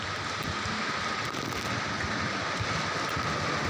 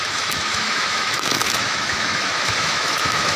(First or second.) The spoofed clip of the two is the second